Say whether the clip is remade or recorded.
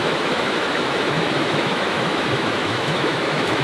remade